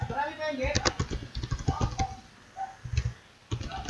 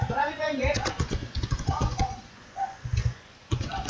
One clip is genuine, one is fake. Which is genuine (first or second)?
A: first